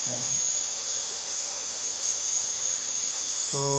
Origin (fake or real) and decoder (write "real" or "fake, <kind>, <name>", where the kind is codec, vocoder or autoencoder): fake, autoencoder, DAC-VAE